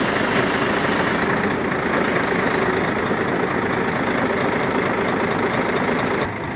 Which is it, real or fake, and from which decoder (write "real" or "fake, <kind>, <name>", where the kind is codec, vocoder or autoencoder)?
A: real